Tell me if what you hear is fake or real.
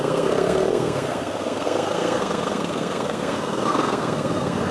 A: fake